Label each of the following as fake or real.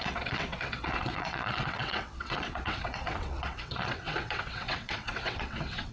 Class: fake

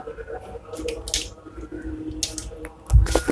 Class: real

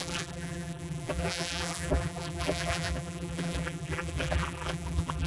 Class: fake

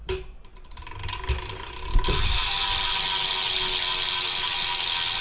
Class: real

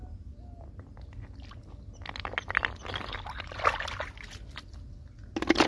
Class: real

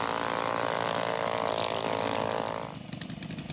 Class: real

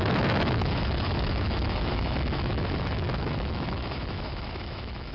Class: fake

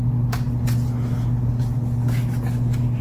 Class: real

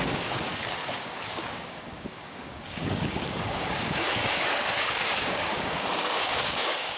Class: fake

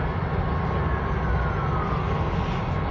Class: real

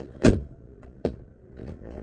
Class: fake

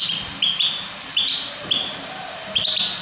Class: fake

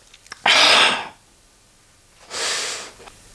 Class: real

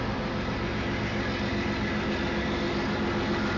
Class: real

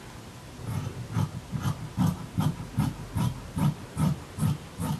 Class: real